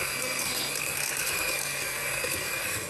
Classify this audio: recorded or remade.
remade